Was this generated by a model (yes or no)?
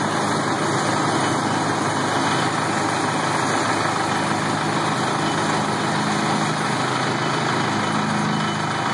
no